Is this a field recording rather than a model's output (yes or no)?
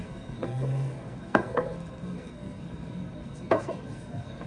no